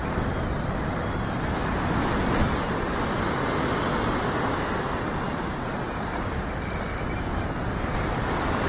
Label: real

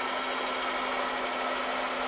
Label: real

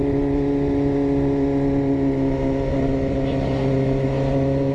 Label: real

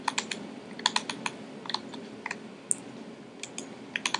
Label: real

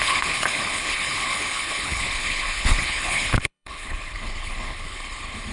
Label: fake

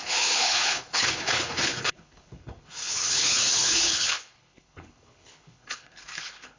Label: fake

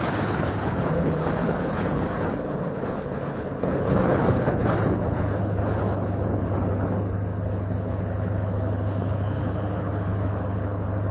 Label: fake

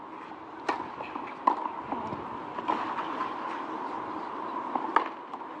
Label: real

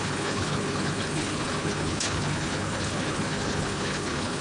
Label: fake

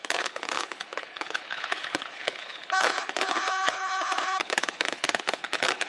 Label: fake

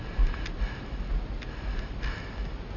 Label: real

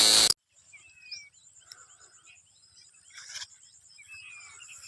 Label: real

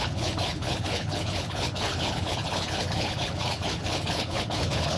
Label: fake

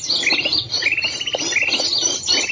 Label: real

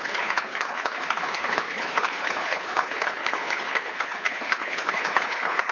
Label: fake